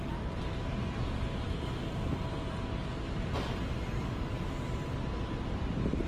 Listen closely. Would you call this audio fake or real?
real